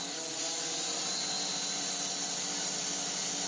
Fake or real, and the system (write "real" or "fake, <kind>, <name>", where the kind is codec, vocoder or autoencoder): real